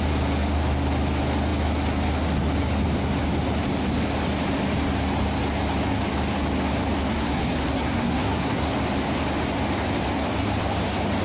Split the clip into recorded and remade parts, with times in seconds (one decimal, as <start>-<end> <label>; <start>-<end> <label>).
0.0-7.1 recorded; 7.1-8.7 remade; 8.7-11.2 recorded